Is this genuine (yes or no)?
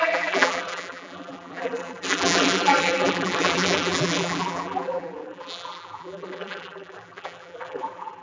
no